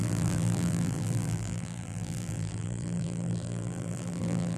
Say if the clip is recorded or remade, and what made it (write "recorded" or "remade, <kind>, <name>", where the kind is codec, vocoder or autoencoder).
remade, vocoder, BigVGAN v2